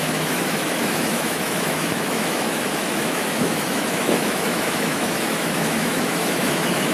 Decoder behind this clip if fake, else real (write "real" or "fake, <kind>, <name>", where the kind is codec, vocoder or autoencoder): fake, autoencoder, DAC-VAE